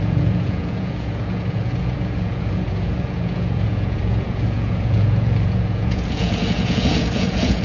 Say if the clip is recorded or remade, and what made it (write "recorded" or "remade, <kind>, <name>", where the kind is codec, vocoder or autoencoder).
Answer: remade, vocoder, Vocos